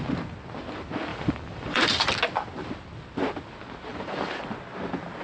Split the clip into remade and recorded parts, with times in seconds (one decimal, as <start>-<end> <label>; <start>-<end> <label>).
0.0-1.1 recorded; 1.1-2.1 remade; 2.1-3.9 recorded; 3.9-4.4 remade; 4.4-5.2 recorded